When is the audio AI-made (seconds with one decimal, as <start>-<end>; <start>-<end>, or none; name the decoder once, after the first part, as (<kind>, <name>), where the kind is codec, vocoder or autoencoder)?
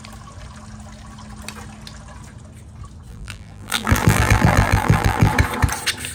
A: 3.1-5.3 (vocoder, BigVGAN v2)